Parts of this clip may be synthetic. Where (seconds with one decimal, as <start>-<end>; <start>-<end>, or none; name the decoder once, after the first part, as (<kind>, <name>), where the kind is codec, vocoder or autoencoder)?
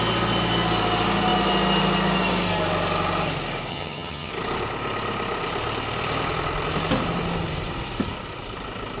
3.7-4.3 (vocoder, HiFi-GAN)